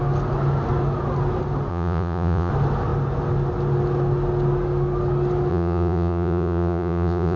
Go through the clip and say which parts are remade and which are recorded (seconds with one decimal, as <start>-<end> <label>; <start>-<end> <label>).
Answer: 0.0-1.7 recorded; 1.7-2.5 remade; 2.5-5.5 recorded; 5.5-7.4 remade

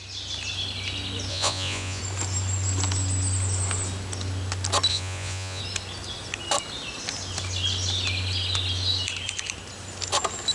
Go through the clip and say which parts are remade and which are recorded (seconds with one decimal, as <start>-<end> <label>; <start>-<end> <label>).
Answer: 0.0-1.3 recorded; 1.3-2.0 remade; 2.0-4.9 recorded; 4.9-5.6 remade; 5.6-10.5 recorded

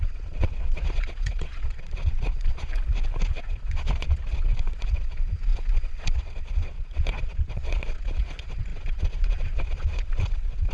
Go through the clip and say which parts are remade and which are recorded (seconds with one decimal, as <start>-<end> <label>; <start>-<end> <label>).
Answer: 0.0-2.7 remade; 2.7-3.4 recorded; 3.4-10.7 remade

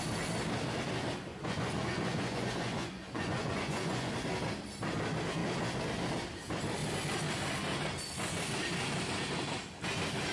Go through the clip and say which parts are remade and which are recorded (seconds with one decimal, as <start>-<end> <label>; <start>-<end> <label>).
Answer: 0.0-1.3 recorded; 1.3-4.1 remade; 4.1-10.3 recorded

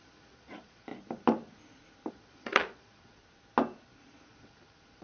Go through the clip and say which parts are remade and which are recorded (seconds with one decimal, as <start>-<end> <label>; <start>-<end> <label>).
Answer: 0.0-0.9 remade; 0.9-2.1 recorded; 2.1-3.2 remade; 3.2-4.0 recorded; 4.0-5.0 remade

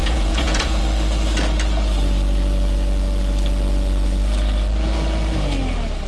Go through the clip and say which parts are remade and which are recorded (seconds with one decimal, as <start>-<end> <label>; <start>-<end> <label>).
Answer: 0.0-0.8 remade; 0.8-6.1 recorded

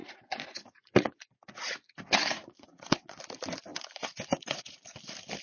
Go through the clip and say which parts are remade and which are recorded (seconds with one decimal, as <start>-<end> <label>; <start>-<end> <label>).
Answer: 0.0-3.2 remade; 3.2-3.7 recorded; 3.7-4.8 remade; 4.8-5.4 recorded

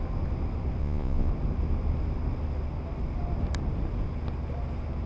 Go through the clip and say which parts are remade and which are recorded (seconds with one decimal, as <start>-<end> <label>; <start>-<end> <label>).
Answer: 0.0-0.8 recorded; 0.8-1.3 remade; 1.3-5.1 recorded